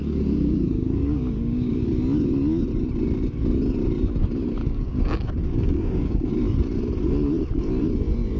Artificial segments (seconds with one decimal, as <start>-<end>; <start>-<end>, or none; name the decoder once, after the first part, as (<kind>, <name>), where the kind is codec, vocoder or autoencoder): 0.0-1.9 (codec, DAC); 4.6-6.3